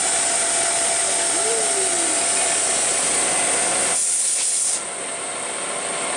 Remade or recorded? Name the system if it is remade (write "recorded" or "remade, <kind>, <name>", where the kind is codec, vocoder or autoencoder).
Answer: recorded